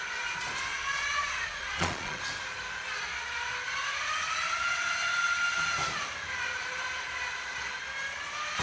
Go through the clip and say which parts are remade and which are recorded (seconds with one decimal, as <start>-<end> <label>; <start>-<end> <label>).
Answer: 0.0-0.7 recorded; 0.7-2.2 remade; 2.2-8.6 recorded